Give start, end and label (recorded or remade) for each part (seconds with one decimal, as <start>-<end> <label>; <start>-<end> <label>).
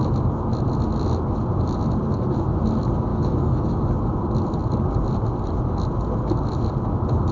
0.0-3.1 recorded; 3.1-3.9 remade; 3.9-7.3 recorded